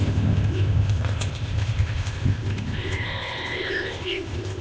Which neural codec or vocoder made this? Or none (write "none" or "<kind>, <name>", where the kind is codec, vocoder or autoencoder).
codec, ZipCodec